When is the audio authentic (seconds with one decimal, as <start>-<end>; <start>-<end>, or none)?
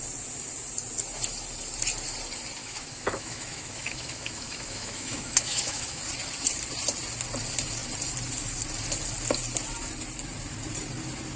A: 0.0-2.6; 6.0-11.4